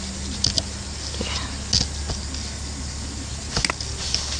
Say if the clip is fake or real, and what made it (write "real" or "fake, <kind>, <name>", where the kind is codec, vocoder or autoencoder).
real